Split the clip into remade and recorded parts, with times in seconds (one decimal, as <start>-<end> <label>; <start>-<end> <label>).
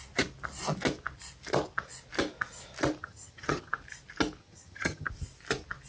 0.0-3.0 recorded; 3.0-3.7 remade; 3.7-4.4 recorded; 4.4-5.1 remade; 5.1-5.9 recorded